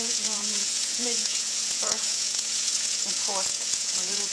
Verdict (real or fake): fake